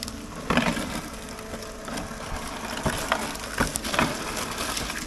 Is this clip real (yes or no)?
yes